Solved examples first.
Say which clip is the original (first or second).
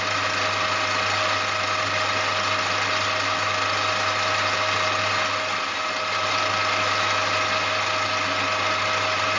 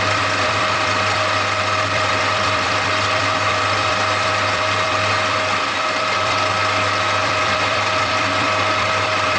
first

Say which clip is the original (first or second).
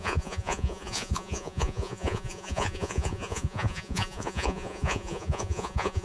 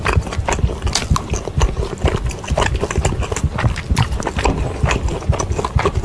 second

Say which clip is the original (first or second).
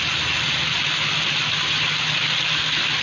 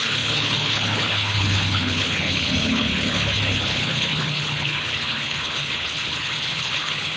first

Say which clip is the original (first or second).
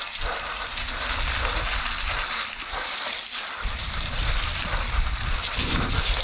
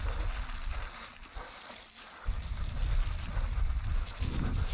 second